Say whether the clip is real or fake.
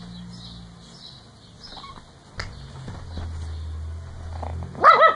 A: real